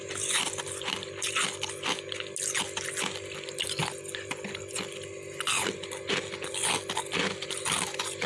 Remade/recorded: recorded